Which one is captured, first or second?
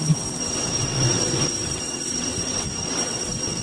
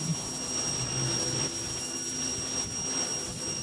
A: second